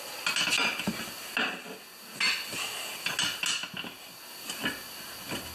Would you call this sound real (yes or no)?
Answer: yes